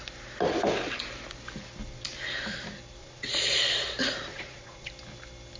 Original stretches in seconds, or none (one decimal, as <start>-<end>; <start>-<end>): 0.0-3.0; 3.9-4.3; 4.9-5.6